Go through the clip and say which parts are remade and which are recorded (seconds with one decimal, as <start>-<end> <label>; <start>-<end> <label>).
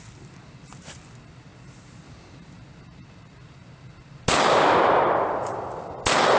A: 0.0-6.4 recorded